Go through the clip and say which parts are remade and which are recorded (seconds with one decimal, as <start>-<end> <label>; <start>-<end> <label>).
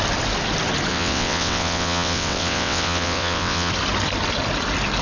0.0-0.9 recorded; 0.9-3.7 remade; 3.7-5.0 recorded